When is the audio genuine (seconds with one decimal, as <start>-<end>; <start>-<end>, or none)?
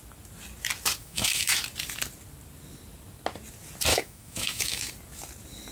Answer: 0.0-1.0; 1.6-3.9; 4.9-5.7